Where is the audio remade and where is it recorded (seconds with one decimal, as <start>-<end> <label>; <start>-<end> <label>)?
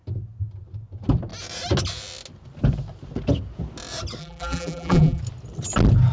0.0-4.2 recorded; 4.2-5.2 remade; 5.2-6.1 recorded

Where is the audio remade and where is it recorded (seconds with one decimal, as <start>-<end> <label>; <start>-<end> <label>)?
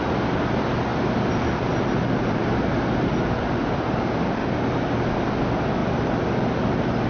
0.0-7.1 recorded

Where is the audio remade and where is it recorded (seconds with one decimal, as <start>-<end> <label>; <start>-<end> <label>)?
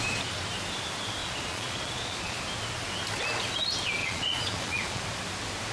0.0-1.2 recorded; 1.2-2.4 remade; 2.4-4.0 recorded; 4.0-5.0 remade; 5.0-5.7 recorded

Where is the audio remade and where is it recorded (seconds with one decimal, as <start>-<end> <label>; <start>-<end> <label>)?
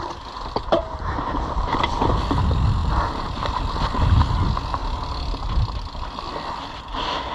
0.0-0.8 recorded; 0.8-2.1 remade; 2.1-2.8 recorded; 2.8-3.6 remade; 3.6-7.3 recorded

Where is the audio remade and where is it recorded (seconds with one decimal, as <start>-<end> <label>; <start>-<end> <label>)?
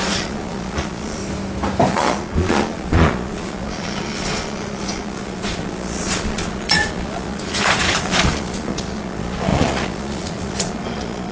0.0-1.2 remade; 1.2-1.9 recorded; 1.9-11.3 remade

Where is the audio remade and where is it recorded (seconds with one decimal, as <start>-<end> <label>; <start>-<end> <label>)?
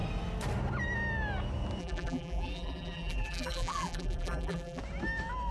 0.0-1.8 recorded; 1.8-4.8 remade; 4.8-5.5 recorded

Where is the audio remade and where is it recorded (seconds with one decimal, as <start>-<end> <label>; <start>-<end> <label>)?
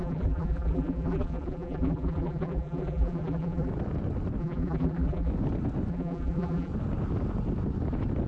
0.0-3.7 remade; 3.7-4.4 recorded; 4.4-5.3 remade; 5.3-5.9 recorded; 5.9-6.7 remade; 6.7-8.3 recorded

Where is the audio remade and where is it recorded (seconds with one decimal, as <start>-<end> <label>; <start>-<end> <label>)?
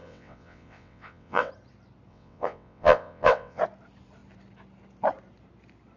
0.0-1.5 remade; 1.5-2.1 recorded; 2.1-3.6 remade; 3.6-6.0 recorded